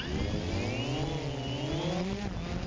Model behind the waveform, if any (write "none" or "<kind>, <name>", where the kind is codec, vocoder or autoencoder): none